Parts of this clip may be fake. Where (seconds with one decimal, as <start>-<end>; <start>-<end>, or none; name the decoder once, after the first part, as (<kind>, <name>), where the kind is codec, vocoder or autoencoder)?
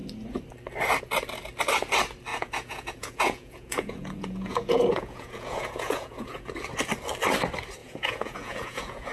2.3-6.5 (vocoder, Vocos); 7.8-9.1